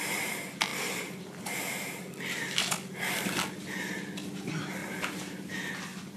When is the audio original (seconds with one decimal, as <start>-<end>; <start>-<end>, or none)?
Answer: 0.0-4.8; 5.7-6.2